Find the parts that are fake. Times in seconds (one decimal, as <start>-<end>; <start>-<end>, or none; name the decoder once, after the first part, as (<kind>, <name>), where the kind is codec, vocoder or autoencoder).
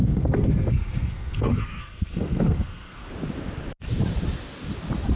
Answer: 0.0-3.1 (codec, SNAC)